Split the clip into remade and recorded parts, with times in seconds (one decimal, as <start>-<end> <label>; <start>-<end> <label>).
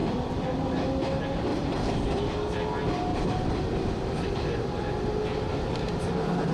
0.0-0.7 remade; 0.7-1.5 recorded; 1.5-2.2 remade; 2.2-3.1 recorded; 3.1-4.9 remade; 4.9-6.5 recorded